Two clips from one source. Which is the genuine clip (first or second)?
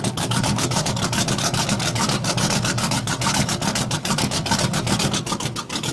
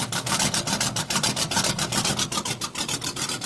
second